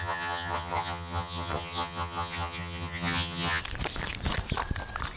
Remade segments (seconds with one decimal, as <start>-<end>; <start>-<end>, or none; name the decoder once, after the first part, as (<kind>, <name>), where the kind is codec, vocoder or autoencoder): 0.0-3.6 (vocoder, HiFi-GAN)